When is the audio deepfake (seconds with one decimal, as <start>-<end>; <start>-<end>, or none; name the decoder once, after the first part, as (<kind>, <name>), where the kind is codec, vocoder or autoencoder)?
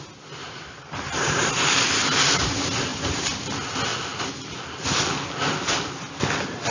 0.4-1.7 (vocoder, BigVGAN v2); 2.9-3.4